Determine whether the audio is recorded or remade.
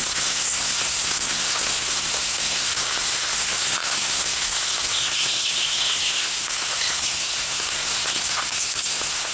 remade